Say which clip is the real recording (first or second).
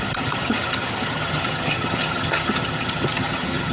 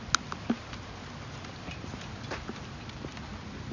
second